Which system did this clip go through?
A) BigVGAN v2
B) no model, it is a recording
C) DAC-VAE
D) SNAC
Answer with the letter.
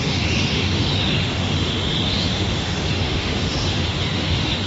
C